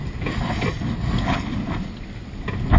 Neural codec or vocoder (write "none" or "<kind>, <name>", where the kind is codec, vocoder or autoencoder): none